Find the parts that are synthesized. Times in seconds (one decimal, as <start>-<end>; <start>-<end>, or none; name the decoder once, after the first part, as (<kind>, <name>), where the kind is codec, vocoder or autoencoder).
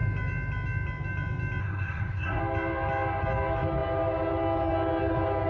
1.6-2.4 (codec, SNAC)